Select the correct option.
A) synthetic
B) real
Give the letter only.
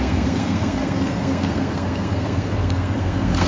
A